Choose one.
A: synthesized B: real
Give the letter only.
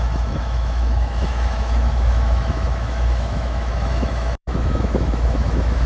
A